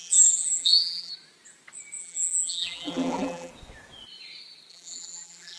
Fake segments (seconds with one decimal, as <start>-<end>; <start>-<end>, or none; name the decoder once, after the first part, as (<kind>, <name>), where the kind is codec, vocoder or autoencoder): 0.0-1.1 (vocoder, BigVGAN v2); 2.0-3.5; 4.7-5.6